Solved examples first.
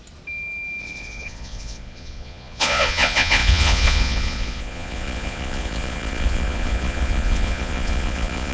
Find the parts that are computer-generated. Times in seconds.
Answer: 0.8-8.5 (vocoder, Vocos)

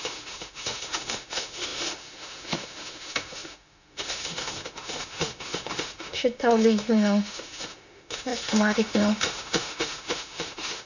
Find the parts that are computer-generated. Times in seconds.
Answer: 0.0-10.9 (autoencoder, DAC-VAE)

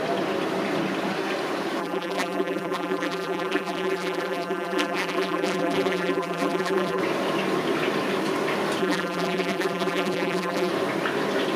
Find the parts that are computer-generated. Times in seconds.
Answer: 1.8-7.0 (vocoder, BigVGAN v2); 8.8-10.7

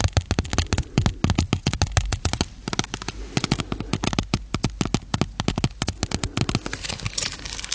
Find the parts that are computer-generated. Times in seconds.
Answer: none

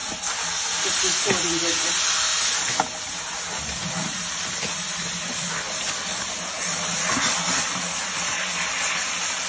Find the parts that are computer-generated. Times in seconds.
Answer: none